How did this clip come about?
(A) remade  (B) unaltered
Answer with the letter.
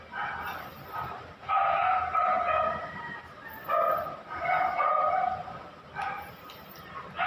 B